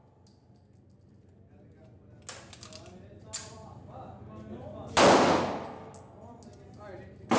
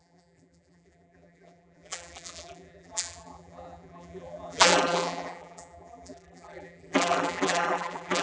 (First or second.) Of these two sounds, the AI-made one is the second